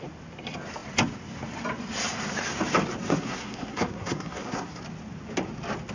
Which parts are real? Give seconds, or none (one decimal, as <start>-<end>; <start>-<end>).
0.0-3.0; 4.8-5.9